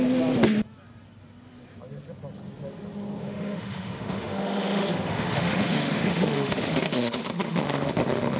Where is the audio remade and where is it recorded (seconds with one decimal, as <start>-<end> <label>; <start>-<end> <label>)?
0.0-3.2 recorded; 3.2-8.4 remade